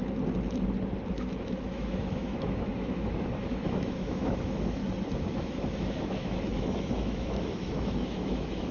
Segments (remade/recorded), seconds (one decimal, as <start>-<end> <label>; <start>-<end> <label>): 0.0-1.1 recorded; 1.1-4.8 remade; 4.8-5.3 recorded; 5.3-8.7 remade